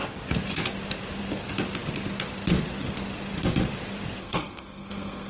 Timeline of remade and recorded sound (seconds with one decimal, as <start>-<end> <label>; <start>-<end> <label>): 0.0-4.2 recorded; 4.2-5.3 remade